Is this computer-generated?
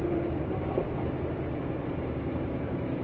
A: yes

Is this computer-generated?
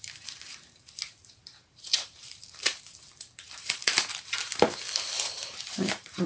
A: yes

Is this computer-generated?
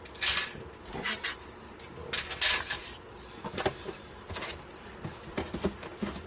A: no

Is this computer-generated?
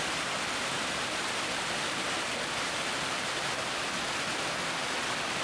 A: no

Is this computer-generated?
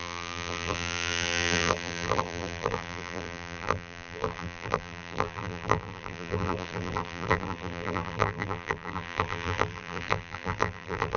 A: yes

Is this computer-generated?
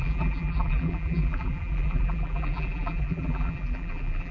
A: yes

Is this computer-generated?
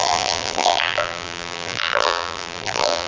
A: yes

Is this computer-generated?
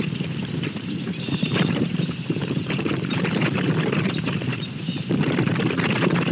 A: yes